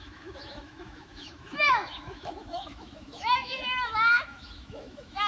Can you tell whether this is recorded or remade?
remade